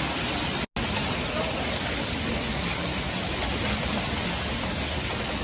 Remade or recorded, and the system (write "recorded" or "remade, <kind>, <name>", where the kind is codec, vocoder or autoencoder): recorded